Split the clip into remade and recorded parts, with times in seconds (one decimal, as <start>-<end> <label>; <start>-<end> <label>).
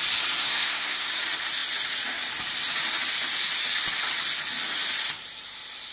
0.0-0.4 recorded; 0.4-1.1 remade; 1.1-5.9 recorded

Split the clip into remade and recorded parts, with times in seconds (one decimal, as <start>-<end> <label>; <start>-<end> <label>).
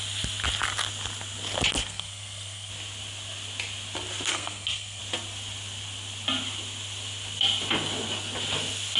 0.0-1.8 recorded; 1.8-2.7 remade; 2.7-4.3 recorded; 4.3-5.0 remade; 5.0-9.0 recorded